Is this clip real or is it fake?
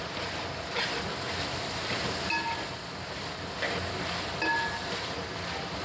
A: real